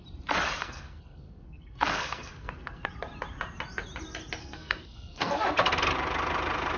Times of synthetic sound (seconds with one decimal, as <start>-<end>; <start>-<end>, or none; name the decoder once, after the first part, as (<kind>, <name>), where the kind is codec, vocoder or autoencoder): 0.6-2.9 (codec, SNAC); 4.4-5.4